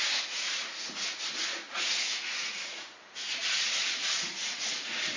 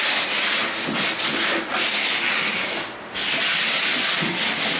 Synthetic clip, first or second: first